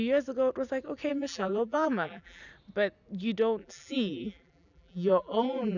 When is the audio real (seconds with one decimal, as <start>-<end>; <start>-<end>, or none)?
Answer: 0.0-1.1; 2.4-3.6